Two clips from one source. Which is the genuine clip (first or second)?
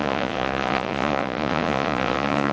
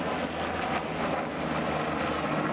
second